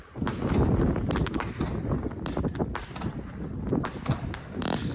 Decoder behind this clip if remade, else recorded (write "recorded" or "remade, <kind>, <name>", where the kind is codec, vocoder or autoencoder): recorded